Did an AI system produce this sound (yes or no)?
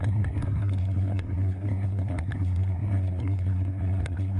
yes